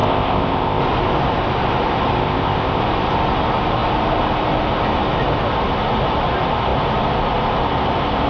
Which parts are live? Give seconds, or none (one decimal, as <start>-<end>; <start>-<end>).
0.8-2.2; 2.8-8.3